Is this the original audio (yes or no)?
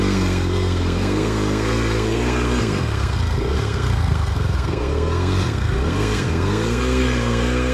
no